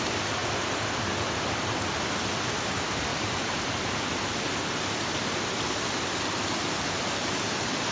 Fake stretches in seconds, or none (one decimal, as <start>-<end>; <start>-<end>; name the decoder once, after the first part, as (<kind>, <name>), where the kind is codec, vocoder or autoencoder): 3.1-4.0 (vocoder, BigVGAN v2)

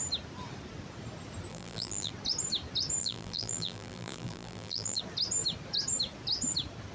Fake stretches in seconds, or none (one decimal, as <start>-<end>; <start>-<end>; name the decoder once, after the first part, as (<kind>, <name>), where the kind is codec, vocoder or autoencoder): 1.5-2.1 (vocoder, BigVGAN v2); 3.0-5.0

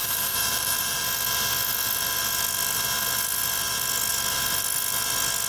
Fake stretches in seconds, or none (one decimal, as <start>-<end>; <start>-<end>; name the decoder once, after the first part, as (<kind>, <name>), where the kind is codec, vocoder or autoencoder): 0.0-1.0 (vocoder, BigVGAN v2)

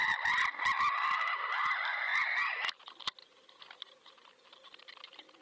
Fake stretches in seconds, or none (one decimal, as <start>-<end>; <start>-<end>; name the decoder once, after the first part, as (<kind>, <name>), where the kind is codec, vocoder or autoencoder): none

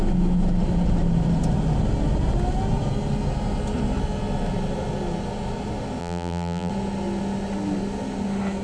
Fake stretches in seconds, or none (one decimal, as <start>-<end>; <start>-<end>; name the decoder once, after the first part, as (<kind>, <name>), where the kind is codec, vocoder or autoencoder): 6.0-6.7 (vocoder, BigVGAN v2)

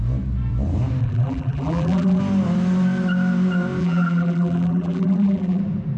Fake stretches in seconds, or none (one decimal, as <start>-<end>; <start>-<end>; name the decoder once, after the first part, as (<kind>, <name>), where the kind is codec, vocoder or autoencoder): 1.0-2.2 (vocoder, BigVGAN v2); 3.8-5.6

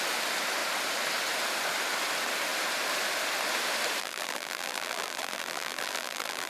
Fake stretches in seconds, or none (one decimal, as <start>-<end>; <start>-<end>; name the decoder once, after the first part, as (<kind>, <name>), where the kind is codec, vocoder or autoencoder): 4.0-6.5 (vocoder, BigVGAN v2)

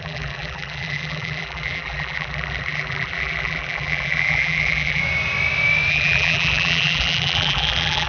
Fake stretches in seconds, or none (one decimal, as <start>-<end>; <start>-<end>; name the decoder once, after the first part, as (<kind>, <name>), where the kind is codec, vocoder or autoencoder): 0.0-5.0 (vocoder, BigVGAN v2); 5.9-8.1